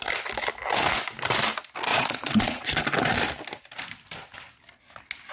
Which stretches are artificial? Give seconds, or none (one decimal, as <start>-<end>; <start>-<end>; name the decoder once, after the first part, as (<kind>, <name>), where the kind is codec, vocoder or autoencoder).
1.9-2.8 (vocoder, Vocos)